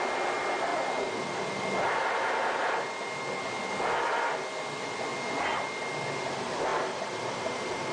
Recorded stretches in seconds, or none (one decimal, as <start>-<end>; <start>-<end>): 0.0-0.7; 1.6-6.7